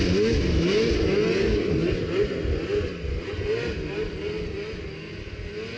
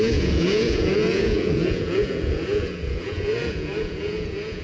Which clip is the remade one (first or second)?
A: second